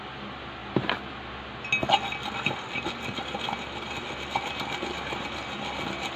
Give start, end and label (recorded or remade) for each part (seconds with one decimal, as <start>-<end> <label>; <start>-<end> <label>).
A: 0.0-6.2 recorded